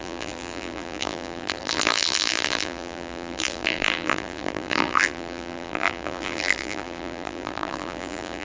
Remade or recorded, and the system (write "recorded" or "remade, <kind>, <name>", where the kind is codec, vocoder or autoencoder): remade, vocoder, BigVGAN v2